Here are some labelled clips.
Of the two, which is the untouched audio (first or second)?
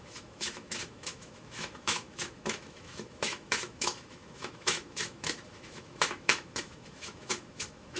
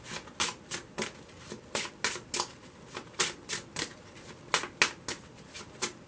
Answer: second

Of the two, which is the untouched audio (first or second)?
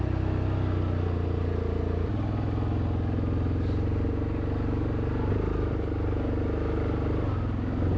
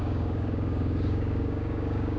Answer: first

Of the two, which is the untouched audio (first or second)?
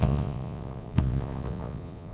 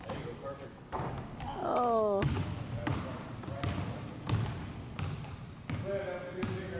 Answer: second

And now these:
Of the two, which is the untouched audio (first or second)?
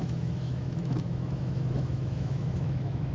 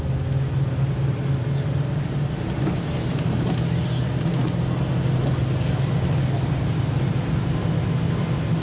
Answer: second